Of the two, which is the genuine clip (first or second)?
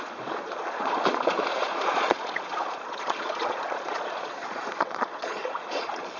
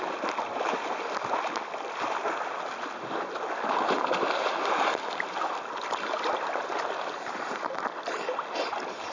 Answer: second